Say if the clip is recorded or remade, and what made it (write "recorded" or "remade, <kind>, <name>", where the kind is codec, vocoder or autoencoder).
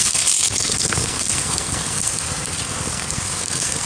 remade, codec, SNAC